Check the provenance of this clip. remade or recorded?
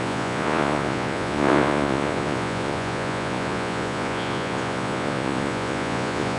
remade